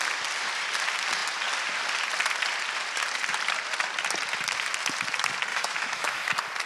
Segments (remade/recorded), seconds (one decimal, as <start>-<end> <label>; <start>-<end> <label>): 0.0-5.5 recorded; 5.5-6.3 remade; 6.3-6.7 recorded